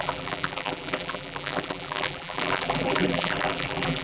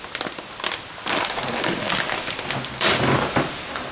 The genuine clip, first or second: second